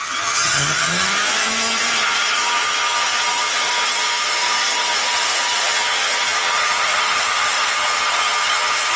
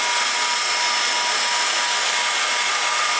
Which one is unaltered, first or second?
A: second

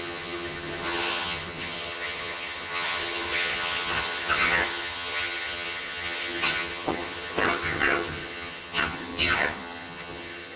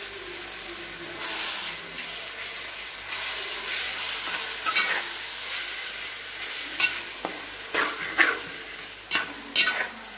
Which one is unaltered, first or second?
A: second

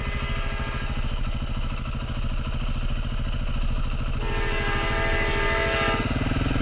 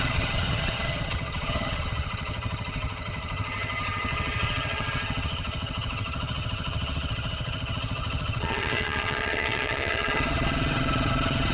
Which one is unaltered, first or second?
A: first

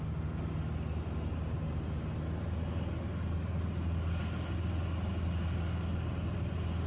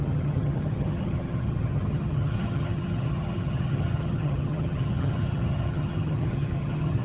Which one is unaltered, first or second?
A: first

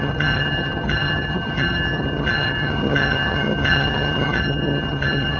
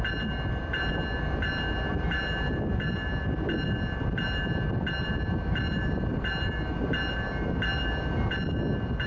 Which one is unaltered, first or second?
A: second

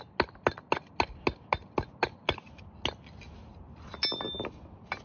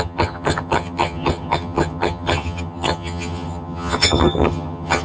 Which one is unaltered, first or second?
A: first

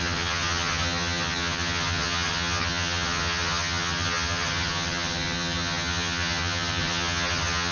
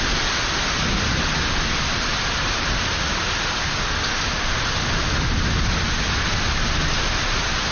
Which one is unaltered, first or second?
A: second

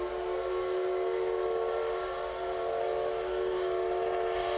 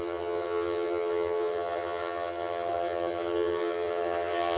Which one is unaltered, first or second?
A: first